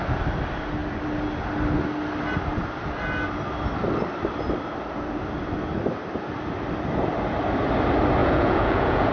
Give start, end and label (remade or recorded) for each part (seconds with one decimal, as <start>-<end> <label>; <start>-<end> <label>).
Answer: 0.0-8.2 recorded; 8.2-9.1 remade